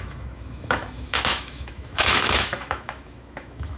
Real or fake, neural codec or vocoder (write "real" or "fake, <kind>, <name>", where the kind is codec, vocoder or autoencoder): fake, autoencoder, DAC-VAE